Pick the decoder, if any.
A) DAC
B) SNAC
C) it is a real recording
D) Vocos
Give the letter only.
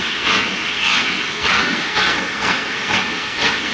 B